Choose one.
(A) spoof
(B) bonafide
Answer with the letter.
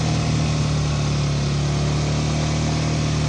B